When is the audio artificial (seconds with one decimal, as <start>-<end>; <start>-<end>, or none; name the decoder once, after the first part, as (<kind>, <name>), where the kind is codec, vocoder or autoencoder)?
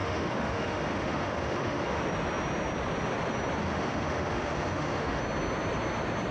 0.0-2.0 (autoencoder, DAC-VAE); 3.6-5.2